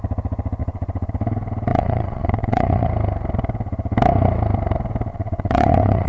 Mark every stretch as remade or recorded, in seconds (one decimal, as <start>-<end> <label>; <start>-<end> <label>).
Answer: 0.0-0.6 recorded; 0.6-1.1 remade; 1.1-1.7 recorded; 1.7-2.9 remade; 2.9-5.1 recorded; 5.1-6.1 remade